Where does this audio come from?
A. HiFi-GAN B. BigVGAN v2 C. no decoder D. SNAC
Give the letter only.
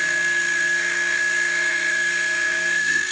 D